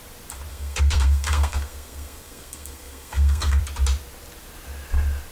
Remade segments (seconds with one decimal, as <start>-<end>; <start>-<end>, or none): 0.5-3.6